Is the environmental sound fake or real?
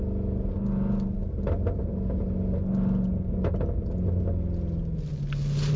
real